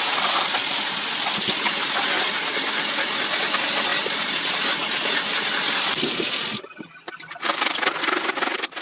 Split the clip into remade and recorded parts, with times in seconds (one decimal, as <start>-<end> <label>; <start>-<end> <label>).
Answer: 0.0-8.8 recorded